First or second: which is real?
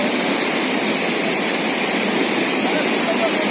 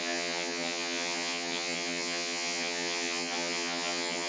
first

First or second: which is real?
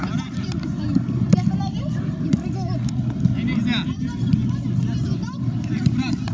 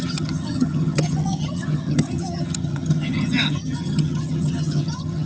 first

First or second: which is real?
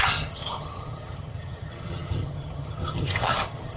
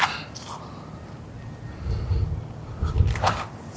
second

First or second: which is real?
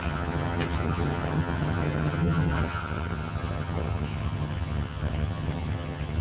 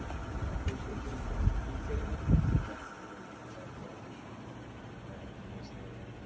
second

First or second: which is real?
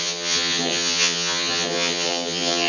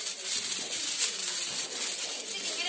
second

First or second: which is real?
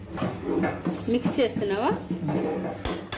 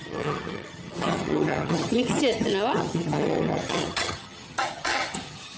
first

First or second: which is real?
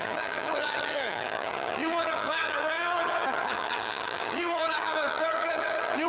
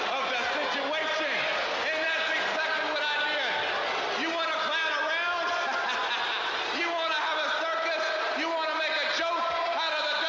second